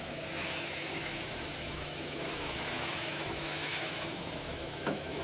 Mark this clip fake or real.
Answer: fake